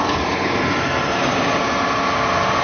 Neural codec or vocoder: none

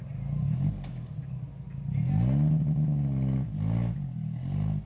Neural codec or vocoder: none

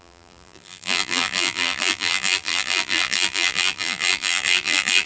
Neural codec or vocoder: vocoder, BigVGAN v2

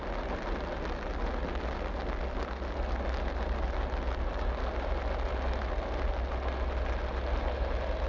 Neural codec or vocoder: none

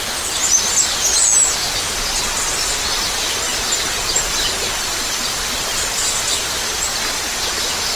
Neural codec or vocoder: none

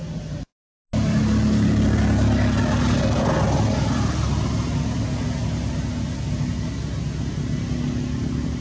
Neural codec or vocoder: none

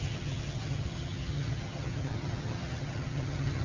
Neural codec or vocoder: vocoder, HiFi-GAN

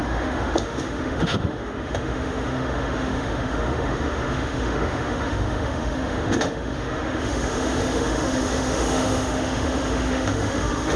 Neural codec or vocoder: autoencoder, DAC-VAE